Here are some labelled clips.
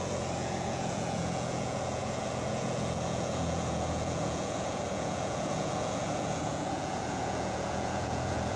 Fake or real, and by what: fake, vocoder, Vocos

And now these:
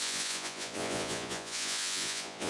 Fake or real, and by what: fake, vocoder, Vocos